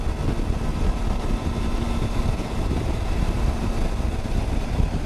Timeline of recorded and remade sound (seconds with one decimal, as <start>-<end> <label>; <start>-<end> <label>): 0.0-0.7 recorded; 0.7-3.8 remade; 3.8-5.1 recorded